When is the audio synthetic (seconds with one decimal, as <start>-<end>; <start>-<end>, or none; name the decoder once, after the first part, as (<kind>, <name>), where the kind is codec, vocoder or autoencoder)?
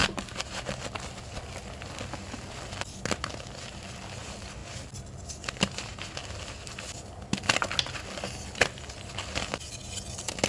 0.0-0.6 (vocoder, BigVGAN v2)